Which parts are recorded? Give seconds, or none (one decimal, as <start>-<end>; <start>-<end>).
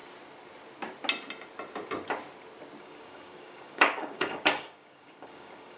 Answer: 0.0-2.8